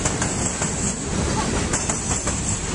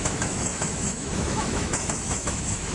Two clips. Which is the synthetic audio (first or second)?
second